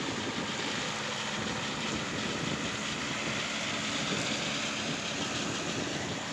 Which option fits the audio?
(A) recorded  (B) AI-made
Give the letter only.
A